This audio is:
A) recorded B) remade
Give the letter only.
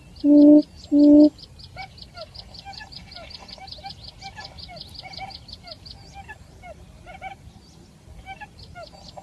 A